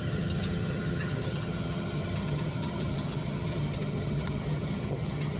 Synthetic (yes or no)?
yes